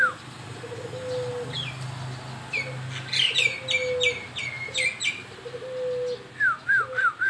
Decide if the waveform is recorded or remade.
recorded